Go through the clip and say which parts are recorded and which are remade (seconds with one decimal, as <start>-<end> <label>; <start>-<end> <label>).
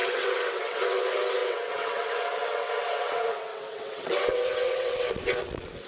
0.0-5.9 remade